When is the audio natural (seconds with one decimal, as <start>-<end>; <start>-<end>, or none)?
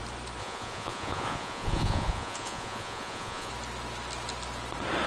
0.0-0.4; 3.5-5.1